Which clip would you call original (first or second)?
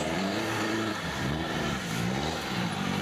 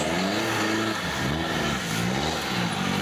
second